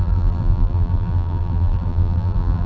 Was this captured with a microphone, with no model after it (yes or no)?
no